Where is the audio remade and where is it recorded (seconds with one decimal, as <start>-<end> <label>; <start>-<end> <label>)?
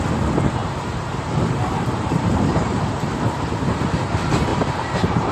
0.0-0.6 recorded; 0.6-3.8 remade; 3.8-4.5 recorded; 4.5-5.3 remade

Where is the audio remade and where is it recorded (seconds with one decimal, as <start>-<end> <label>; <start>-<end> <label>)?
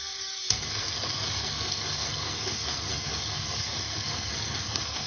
0.0-5.1 remade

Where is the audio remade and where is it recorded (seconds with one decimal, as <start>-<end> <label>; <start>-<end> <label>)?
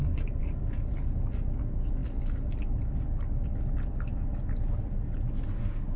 0.0-6.0 recorded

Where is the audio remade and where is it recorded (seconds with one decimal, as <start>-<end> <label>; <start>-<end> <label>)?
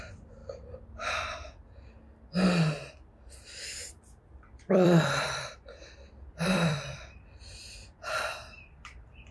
0.0-0.4 remade; 0.4-2.8 recorded; 2.8-9.3 remade